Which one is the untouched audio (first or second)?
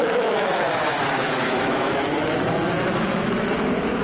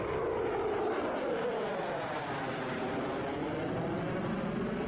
second